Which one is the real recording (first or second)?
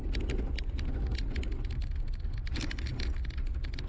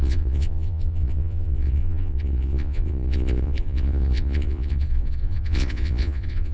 first